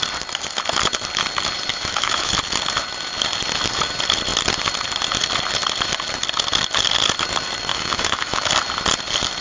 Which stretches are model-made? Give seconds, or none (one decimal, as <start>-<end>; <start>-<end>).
1.7-2.3; 7.7-8.5